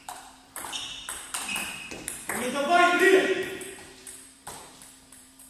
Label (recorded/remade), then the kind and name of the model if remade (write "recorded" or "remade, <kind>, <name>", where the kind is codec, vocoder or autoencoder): remade, vocoder, BigVGAN v2